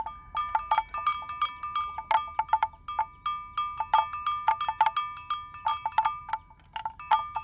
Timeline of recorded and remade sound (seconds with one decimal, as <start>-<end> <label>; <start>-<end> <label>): 0.0-7.4 recorded